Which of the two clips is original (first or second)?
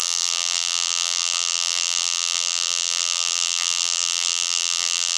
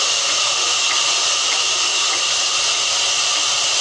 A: second